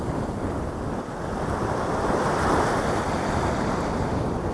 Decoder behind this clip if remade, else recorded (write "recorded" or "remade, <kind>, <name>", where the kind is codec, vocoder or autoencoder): recorded